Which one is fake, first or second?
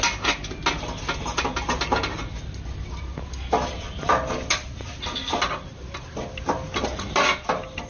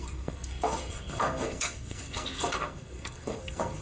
second